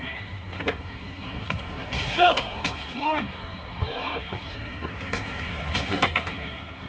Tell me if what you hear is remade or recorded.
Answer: remade